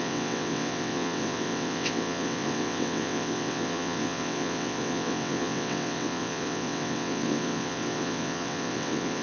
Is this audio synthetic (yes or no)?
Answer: yes